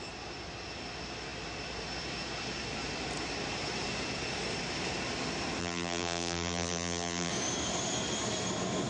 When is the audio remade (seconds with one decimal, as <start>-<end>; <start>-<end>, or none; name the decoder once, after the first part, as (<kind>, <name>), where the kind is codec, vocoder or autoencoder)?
5.6-7.3 (vocoder, BigVGAN v2)